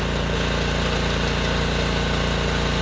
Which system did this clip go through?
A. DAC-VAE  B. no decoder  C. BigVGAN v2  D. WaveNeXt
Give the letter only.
B